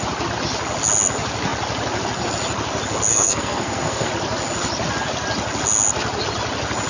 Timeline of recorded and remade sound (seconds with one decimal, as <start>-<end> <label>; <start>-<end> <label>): 0.0-3.1 recorded; 3.1-4.1 remade; 4.1-6.9 recorded